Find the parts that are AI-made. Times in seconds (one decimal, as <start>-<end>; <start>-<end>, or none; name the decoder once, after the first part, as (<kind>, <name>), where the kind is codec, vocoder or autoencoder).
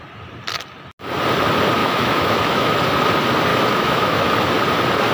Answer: 1.8-2.7 (autoencoder, DAC-VAE); 3.5-4.3